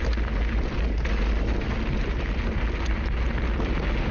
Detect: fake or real real